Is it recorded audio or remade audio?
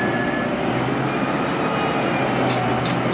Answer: recorded